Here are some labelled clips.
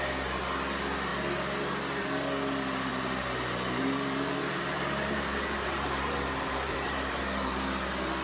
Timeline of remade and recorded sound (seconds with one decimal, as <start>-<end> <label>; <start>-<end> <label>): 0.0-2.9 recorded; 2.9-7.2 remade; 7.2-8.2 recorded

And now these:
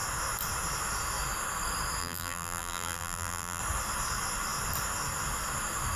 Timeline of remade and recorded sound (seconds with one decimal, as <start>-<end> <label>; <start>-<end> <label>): 0.0-2.0 recorded; 2.0-3.6 remade; 3.6-6.0 recorded

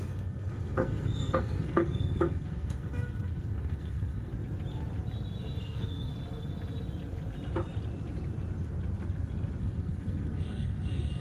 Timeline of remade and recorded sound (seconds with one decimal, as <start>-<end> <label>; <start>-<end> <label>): 0.0-4.3 remade; 4.3-5.6 recorded; 5.6-6.1 remade; 6.1-9.6 recorded; 9.6-11.2 remade

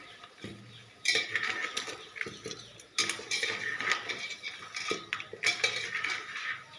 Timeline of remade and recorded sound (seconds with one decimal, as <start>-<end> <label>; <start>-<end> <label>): 0.0-6.8 recorded

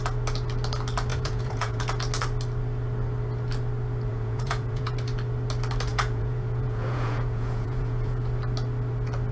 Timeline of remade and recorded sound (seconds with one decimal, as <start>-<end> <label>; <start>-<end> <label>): 0.0-1.1 recorded; 1.1-1.8 remade; 1.8-4.1 recorded; 4.1-4.9 remade; 4.9-5.9 recorded; 5.9-8.2 remade; 8.2-9.3 recorded

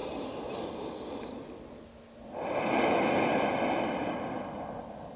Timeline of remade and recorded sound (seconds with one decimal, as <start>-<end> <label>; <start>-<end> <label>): 0.0-5.2 recorded